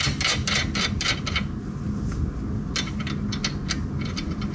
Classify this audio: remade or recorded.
recorded